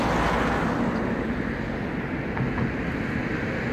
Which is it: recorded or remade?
recorded